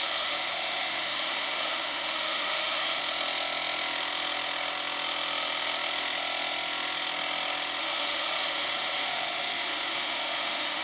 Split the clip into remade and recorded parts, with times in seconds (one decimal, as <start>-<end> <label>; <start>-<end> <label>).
0.0-3.0 remade; 3.0-7.8 recorded; 7.8-10.8 remade